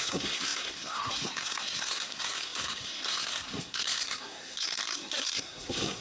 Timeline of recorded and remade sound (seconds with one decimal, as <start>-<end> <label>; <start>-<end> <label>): 0.0-6.0 remade